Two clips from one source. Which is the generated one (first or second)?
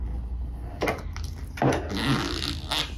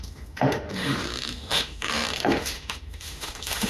second